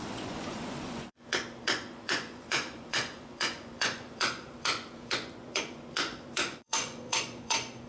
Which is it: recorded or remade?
remade